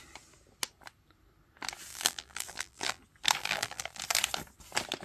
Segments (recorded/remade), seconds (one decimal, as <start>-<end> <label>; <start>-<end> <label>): 0.0-1.9 recorded; 1.9-3.0 remade; 3.0-3.4 recorded; 3.4-4.0 remade; 4.0-5.0 recorded